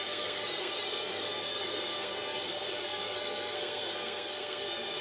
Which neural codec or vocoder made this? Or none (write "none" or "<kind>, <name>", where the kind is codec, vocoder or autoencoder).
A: codec, SNAC